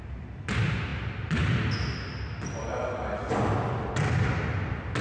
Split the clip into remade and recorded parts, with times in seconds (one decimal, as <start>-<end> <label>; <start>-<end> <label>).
0.0-5.0 recorded